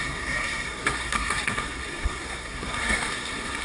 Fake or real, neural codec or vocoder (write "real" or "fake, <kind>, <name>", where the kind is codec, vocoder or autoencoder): fake, codec, SNAC